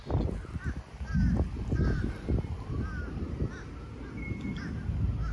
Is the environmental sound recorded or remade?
recorded